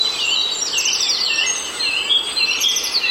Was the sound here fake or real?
real